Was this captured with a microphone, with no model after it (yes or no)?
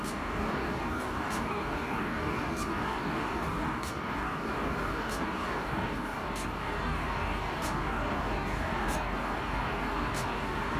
no